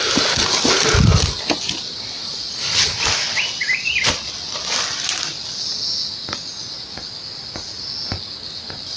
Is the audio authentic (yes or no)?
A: yes